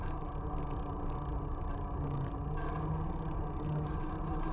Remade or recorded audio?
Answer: recorded